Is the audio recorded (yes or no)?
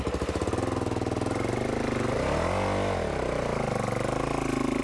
yes